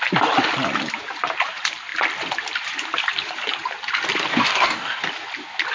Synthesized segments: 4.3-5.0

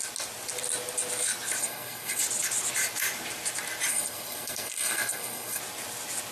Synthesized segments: 1.6-2.2; 3.9-5.6

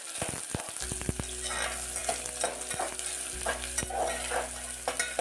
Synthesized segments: none

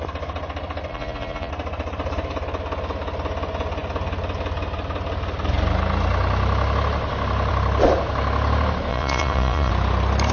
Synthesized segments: 0.9-1.5; 8.9-9.7

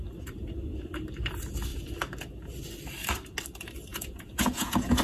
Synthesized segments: 3.9-5.0